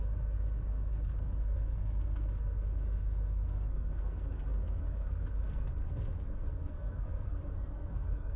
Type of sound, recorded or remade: remade